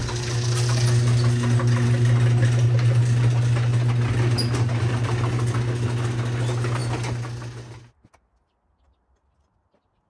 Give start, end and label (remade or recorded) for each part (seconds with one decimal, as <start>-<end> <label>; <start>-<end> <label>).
0.0-10.1 recorded